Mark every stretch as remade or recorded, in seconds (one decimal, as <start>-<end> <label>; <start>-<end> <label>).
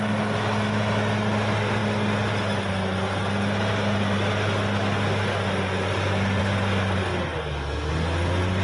0.0-8.6 recorded